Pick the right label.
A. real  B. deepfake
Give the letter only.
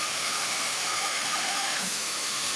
B